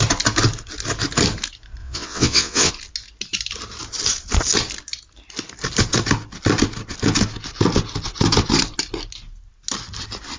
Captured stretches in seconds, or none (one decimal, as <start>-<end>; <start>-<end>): 0.0-1.8; 2.7-10.4